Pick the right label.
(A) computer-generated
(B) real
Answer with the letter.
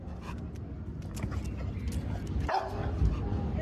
B